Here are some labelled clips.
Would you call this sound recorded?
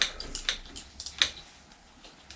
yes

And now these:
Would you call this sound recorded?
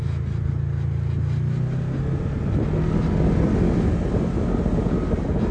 yes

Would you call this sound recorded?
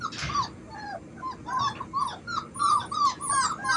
yes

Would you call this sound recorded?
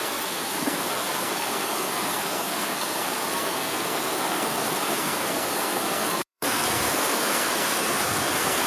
no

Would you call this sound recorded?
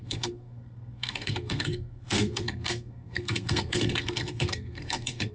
no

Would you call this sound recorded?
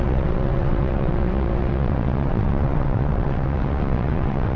no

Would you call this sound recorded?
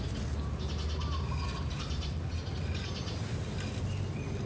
yes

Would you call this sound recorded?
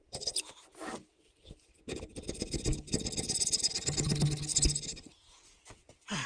yes